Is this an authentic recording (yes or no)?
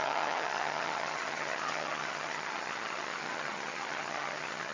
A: no